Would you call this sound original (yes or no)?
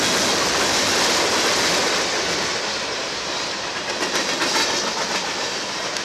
yes